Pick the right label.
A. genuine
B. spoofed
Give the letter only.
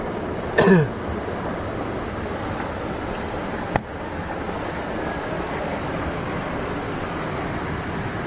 A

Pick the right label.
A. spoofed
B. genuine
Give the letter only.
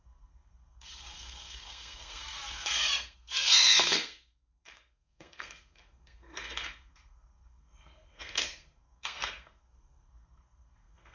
A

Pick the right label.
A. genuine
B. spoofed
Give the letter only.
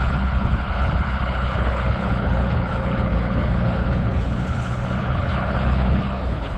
B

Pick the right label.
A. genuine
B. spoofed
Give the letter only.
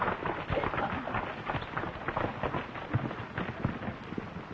A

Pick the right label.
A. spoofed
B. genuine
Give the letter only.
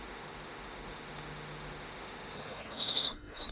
A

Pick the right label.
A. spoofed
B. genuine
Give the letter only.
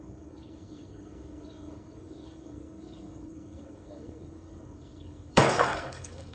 A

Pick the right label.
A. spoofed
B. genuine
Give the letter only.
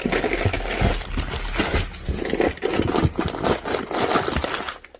B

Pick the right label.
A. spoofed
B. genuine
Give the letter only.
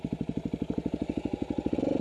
B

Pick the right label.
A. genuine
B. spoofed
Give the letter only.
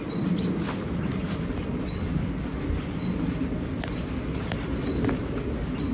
A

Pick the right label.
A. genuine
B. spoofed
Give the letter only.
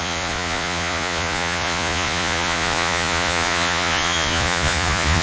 B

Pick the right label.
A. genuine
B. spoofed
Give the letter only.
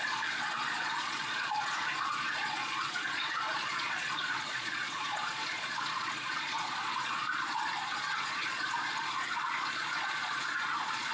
B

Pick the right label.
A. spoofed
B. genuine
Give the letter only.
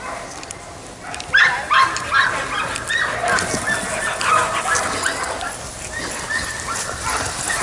B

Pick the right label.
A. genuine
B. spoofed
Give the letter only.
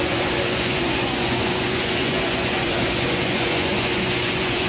B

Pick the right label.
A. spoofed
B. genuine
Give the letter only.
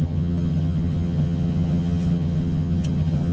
A